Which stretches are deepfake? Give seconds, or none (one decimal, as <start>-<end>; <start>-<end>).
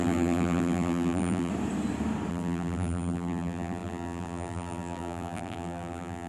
0.0-1.5; 2.3-6.3